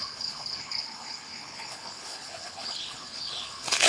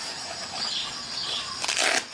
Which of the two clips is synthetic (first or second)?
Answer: first